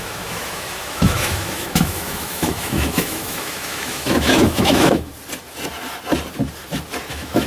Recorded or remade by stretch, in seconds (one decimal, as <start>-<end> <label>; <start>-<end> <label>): 0.0-5.1 remade; 5.1-7.1 recorded; 7.1-7.5 remade

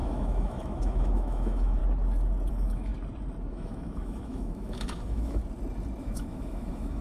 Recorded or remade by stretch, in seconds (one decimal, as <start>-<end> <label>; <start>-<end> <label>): 0.0-1.8 remade; 1.8-2.5 recorded; 2.5-2.9 remade; 2.9-3.5 recorded; 3.5-5.4 remade; 5.4-6.0 recorded; 6.0-7.0 remade

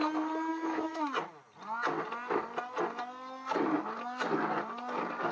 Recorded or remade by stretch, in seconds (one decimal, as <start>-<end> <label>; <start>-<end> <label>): 0.0-0.5 recorded; 0.5-1.0 remade; 1.0-5.3 recorded

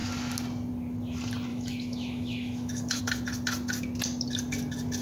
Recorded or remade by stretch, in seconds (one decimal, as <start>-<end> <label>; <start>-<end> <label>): 0.0-1.5 recorded; 1.5-3.0 remade; 3.0-5.0 recorded

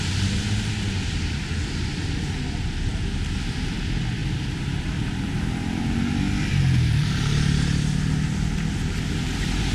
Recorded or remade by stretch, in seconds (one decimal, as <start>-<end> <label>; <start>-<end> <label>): 0.0-9.7 recorded

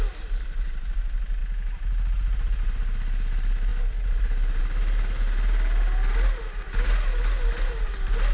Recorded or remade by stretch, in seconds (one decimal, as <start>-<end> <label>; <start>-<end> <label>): 0.0-8.3 recorded

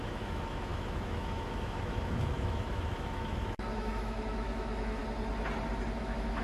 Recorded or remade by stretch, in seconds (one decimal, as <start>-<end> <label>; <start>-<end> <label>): 0.0-5.0 remade; 5.0-6.0 recorded; 6.0-6.4 remade

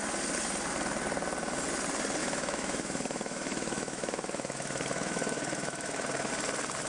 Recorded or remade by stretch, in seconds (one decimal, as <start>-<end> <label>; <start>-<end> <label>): 0.0-2.2 recorded; 2.2-6.3 remade; 6.3-6.9 recorded